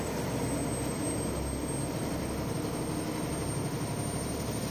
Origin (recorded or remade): recorded